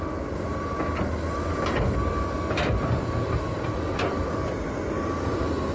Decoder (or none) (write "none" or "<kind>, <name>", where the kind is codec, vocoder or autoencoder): none